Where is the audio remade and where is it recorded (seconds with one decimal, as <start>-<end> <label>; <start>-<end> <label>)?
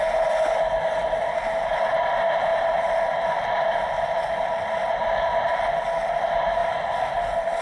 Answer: 0.0-7.6 recorded